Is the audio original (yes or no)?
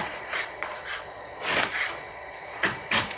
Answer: no